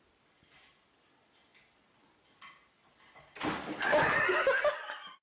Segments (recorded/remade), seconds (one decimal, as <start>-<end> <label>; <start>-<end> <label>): 0.0-5.2 recorded